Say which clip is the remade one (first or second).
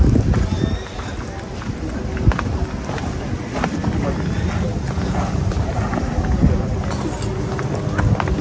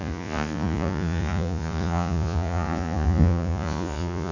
second